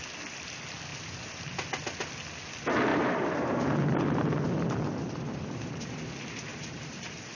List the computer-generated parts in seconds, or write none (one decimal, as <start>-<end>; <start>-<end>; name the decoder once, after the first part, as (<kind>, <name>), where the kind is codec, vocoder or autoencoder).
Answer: 0.9-1.4 (vocoder, BigVGAN v2); 2.9-6.1; 6.5-7.3